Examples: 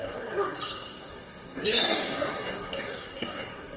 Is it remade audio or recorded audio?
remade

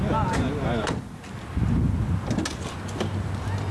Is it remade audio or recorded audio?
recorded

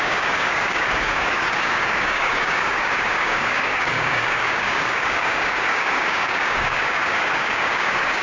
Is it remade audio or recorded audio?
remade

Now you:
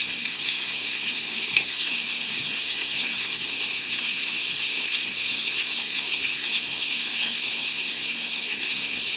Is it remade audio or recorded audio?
remade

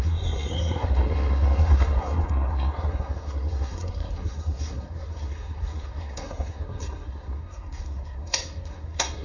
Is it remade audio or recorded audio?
remade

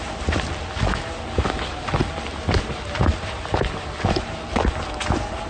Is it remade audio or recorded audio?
recorded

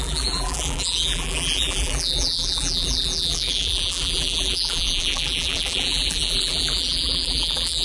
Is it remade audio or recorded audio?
remade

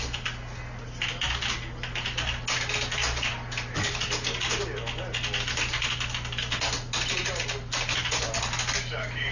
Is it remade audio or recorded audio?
recorded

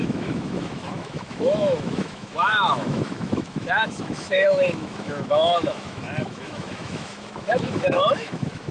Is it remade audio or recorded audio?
remade